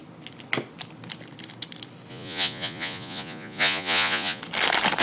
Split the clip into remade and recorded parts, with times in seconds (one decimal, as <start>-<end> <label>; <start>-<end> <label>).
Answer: 0.0-2.1 recorded; 2.1-4.4 remade; 4.4-5.0 recorded